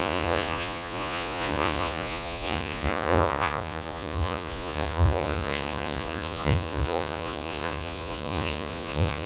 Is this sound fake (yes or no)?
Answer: yes